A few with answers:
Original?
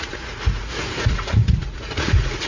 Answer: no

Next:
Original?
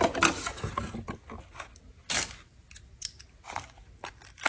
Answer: yes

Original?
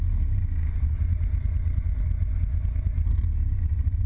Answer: yes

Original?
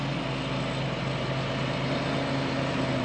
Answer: yes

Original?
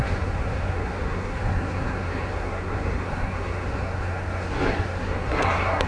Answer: no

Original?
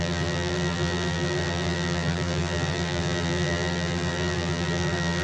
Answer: no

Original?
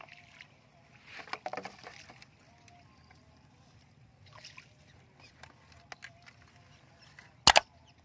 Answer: yes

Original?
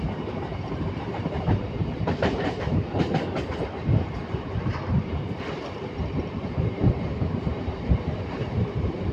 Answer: no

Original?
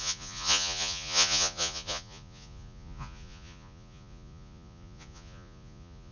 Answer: no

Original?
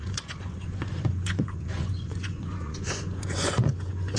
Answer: no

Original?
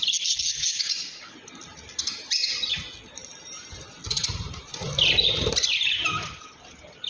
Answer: yes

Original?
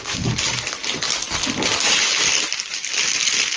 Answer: yes